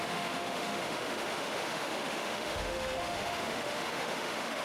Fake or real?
fake